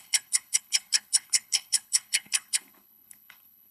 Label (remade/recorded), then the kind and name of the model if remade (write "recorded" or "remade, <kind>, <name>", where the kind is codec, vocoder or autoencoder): remade, codec, HILCodec